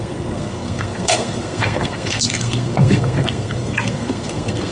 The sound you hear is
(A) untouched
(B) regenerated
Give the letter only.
B